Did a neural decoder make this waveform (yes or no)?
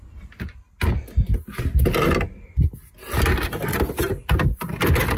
no